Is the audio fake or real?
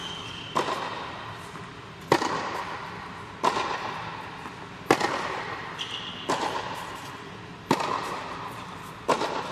real